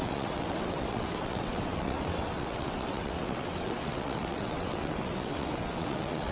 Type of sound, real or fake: fake